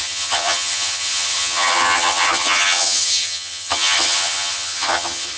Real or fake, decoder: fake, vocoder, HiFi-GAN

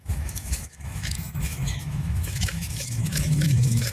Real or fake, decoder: fake, autoencoder, DAC-VAE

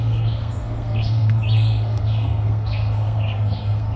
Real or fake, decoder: fake, codec, SNAC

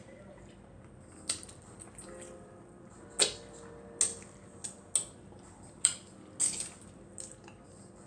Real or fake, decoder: real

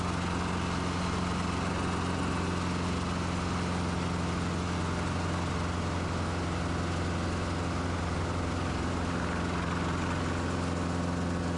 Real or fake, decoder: real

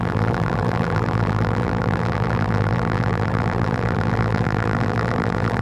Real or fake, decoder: fake, vocoder, BigVGAN v2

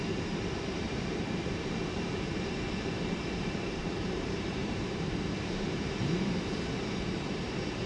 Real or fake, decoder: fake, vocoder, BigVGAN v2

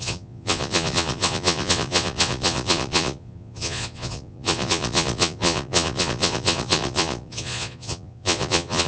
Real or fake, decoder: fake, vocoder, Vocos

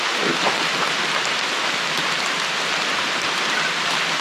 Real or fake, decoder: real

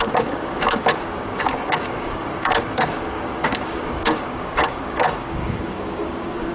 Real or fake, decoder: fake, codec, DAC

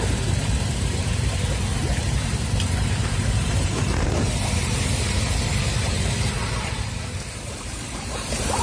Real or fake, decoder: fake, vocoder, BigVGAN v2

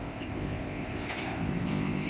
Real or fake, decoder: fake, codec, ZipCodec